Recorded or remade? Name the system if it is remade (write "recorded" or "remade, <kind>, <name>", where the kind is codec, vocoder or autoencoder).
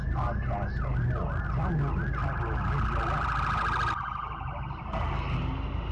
recorded